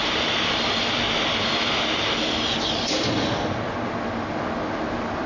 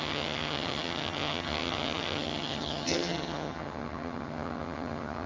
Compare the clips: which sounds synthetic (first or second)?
second